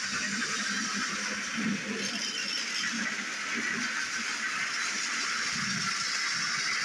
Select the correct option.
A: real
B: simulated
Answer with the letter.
A